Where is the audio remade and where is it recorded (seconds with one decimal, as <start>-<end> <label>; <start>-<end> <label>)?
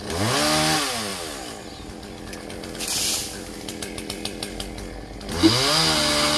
0.0-6.4 recorded